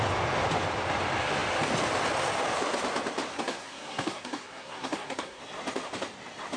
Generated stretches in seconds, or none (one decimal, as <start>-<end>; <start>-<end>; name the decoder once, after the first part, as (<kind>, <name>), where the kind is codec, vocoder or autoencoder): 3.3-5.4 (codec, SNAC)